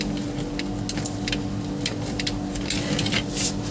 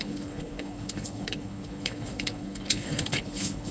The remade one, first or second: second